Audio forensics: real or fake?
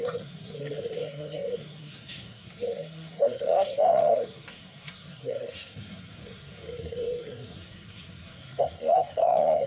fake